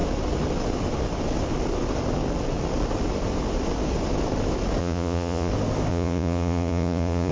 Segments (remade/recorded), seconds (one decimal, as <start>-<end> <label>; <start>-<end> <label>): 0.0-4.8 recorded; 4.8-5.5 remade; 5.5-5.9 recorded; 5.9-7.3 remade